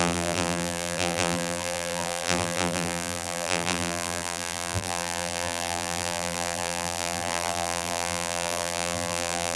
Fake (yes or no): yes